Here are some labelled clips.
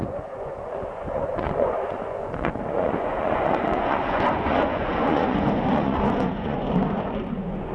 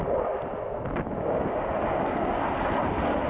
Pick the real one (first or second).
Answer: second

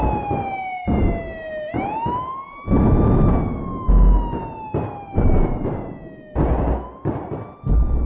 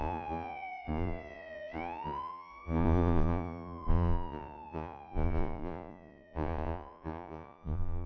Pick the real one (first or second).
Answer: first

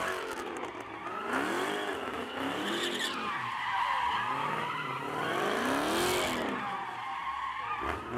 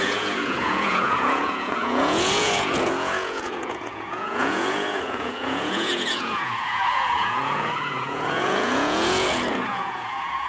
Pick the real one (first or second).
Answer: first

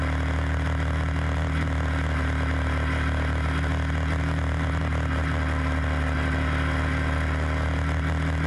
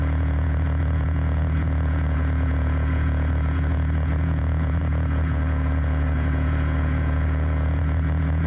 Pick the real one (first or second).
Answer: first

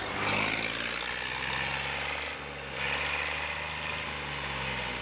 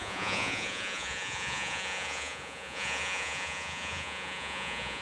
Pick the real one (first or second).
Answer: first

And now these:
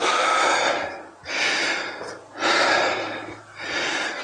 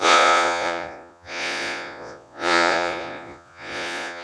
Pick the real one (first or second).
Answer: first